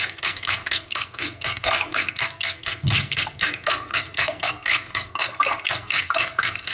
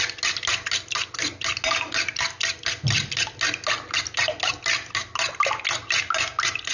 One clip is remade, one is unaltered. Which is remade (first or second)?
first